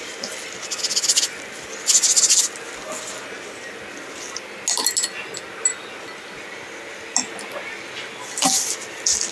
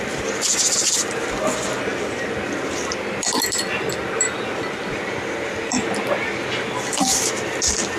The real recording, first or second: first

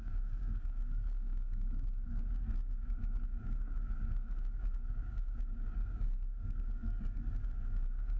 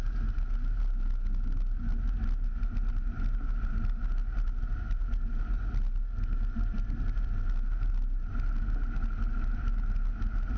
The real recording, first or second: second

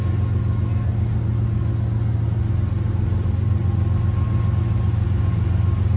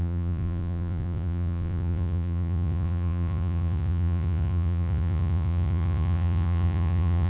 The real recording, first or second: first